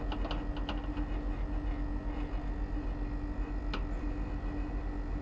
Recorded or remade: recorded